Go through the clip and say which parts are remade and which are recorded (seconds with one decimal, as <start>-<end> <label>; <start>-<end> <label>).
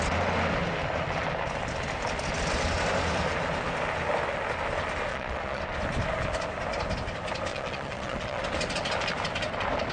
0.0-5.1 recorded; 5.1-5.6 remade; 5.6-7.5 recorded; 7.5-8.4 remade; 8.4-9.9 recorded